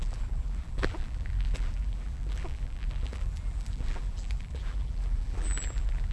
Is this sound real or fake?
fake